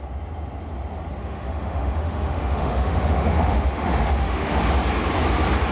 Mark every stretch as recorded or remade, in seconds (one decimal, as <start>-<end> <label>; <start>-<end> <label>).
0.0-1.2 recorded; 1.2-4.6 remade; 4.6-5.7 recorded